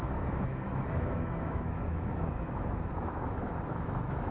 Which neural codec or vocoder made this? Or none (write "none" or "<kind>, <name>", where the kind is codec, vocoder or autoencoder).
autoencoder, DAC-VAE